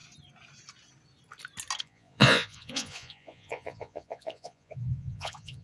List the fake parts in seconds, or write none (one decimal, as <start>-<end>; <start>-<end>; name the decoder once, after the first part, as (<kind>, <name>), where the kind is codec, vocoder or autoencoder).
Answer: 1.8-5.6 (vocoder, Vocos)